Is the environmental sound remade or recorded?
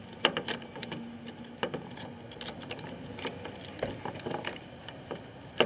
recorded